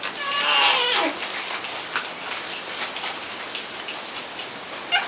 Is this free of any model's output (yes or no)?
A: yes